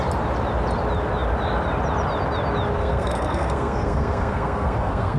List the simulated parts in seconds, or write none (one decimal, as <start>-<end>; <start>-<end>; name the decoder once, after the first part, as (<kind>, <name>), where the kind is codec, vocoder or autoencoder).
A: 2.8-5.2 (codec, SNAC)

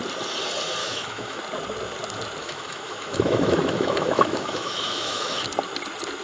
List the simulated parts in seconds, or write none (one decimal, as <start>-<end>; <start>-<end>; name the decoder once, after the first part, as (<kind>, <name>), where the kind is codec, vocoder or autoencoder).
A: 0.8-1.4 (autoencoder, DAC-VAE); 2.4-5.5

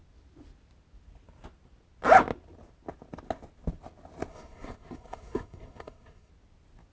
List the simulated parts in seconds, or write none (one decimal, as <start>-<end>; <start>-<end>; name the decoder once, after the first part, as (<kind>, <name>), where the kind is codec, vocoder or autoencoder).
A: 4.3-6.3 (codec, SNAC)

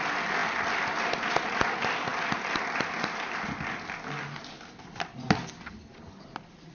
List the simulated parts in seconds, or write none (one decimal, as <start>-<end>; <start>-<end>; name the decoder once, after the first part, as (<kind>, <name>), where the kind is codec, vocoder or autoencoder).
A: none

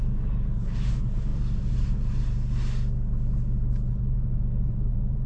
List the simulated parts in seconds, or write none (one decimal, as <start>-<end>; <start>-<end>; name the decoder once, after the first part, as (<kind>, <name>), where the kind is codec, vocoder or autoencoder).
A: 0.0-1.3 (vocoder, BigVGAN v2); 3.7-5.3

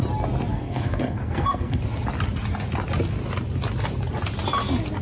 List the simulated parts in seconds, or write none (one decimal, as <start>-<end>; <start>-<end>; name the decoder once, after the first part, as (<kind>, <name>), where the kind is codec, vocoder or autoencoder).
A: 0.5-1.8 (codec, SNAC)